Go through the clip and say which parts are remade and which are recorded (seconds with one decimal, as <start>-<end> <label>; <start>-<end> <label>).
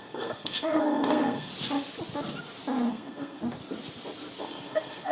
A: 0.0-1.5 remade; 1.5-2.9 recorded; 2.9-3.4 remade; 3.4-4.4 recorded; 4.4-5.1 remade